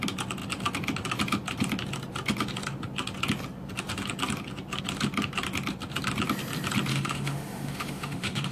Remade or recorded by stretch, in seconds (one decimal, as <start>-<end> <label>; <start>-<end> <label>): 0.0-6.9 recorded; 6.9-8.5 remade